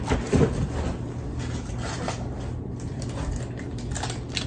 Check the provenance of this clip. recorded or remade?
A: recorded